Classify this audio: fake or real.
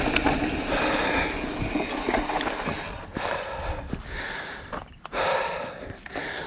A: real